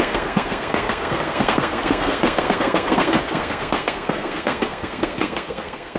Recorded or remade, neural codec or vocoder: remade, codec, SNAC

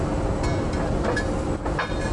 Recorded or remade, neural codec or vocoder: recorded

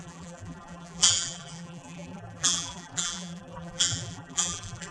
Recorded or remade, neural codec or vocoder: remade, vocoder, BigVGAN v2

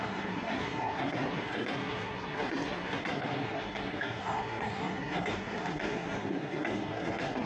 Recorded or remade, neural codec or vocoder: remade, codec, SNAC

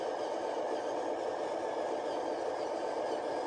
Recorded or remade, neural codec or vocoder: recorded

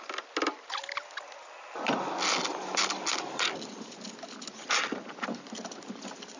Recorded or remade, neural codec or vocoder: recorded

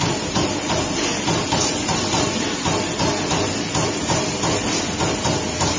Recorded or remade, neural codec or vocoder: recorded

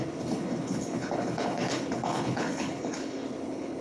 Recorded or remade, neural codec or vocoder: remade, codec, HILCodec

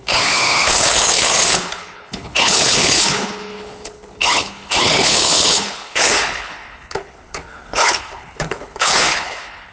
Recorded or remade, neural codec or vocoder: remade, codec, HILCodec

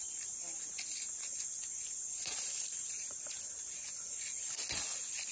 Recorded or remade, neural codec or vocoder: recorded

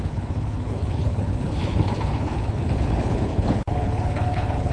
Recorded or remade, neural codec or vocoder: remade, codec, HILCodec